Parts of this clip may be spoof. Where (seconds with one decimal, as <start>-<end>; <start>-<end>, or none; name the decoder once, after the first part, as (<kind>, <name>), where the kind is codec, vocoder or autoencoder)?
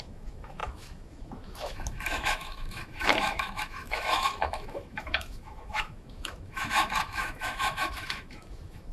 0.0-8.9 (autoencoder, DAC-VAE)